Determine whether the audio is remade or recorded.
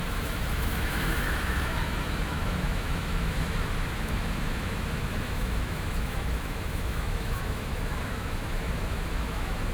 remade